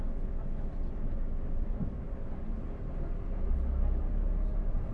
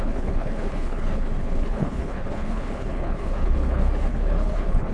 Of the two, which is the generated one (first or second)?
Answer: second